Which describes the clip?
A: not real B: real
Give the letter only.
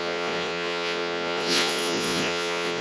A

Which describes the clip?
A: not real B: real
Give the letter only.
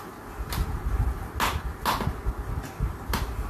B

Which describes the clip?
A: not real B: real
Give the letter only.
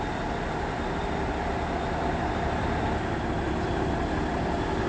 B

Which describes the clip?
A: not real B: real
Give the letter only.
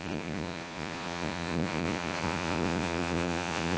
A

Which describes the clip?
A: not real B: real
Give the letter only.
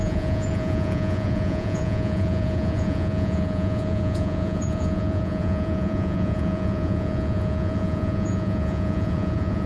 A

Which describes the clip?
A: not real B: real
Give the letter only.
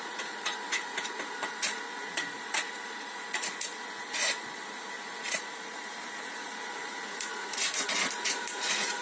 A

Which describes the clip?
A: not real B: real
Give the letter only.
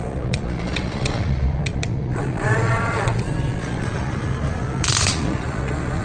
A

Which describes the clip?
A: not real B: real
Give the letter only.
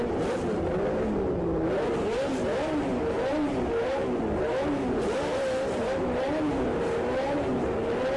B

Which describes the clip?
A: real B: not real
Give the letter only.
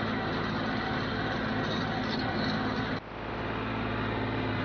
A